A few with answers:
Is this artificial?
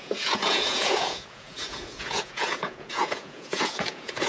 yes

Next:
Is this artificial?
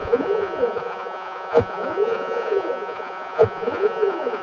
yes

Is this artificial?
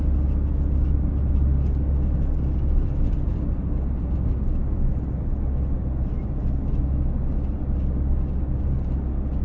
no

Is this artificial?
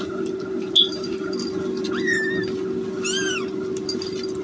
no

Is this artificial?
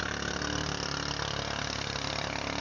yes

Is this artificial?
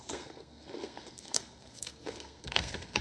yes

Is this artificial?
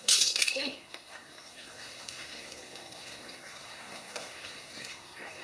yes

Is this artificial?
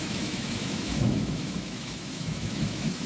yes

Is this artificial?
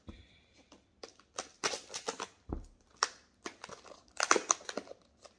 no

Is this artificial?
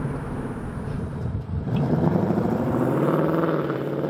yes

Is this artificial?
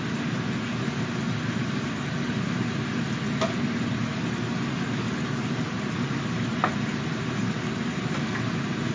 no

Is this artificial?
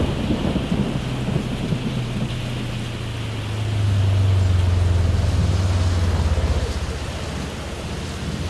no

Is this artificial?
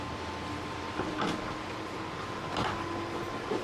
no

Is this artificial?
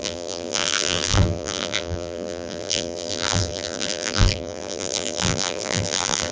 yes